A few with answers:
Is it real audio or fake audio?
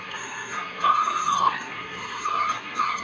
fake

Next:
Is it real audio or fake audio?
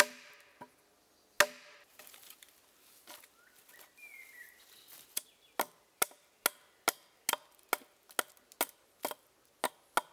real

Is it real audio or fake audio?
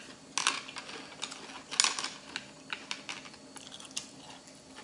real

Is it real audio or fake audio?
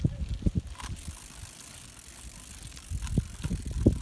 real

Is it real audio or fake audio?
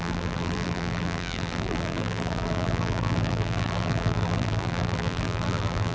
fake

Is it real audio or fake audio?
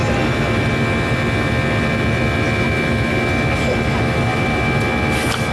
real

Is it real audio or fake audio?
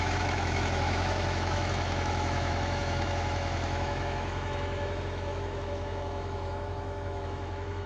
fake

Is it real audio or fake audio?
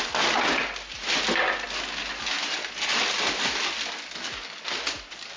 real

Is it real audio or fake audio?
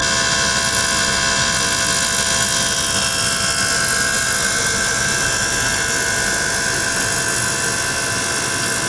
real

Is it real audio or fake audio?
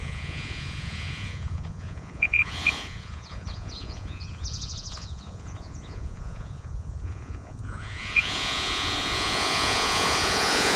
fake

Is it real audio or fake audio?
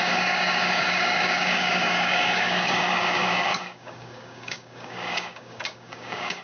fake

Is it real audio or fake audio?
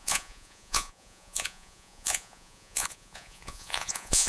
fake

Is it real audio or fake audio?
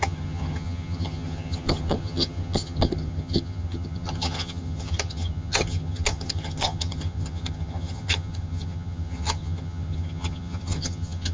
fake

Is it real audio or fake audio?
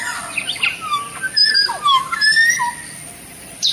real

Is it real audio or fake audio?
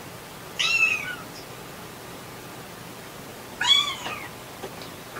real